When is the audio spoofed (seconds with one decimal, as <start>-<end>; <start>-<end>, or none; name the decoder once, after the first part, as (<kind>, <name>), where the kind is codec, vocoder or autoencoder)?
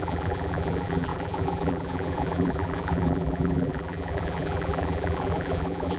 0.0-6.0 (vocoder, BigVGAN v2)